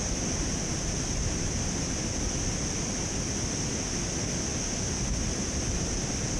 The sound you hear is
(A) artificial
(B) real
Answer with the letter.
B